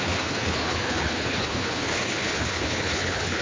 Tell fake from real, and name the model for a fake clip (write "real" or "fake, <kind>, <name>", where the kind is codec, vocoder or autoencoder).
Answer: fake, codec, HILCodec